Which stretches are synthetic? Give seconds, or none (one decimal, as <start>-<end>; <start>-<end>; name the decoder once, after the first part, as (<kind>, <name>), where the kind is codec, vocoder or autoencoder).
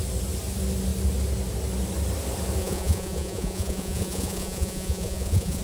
2.6-5.6 (vocoder, Vocos)